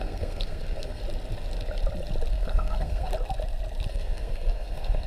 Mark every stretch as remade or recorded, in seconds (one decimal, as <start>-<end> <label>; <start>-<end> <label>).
0.0-1.0 remade; 1.0-2.3 recorded; 2.3-3.1 remade; 3.1-3.9 recorded; 3.9-5.1 remade